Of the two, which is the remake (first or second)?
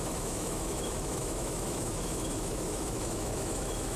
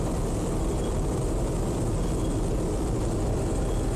first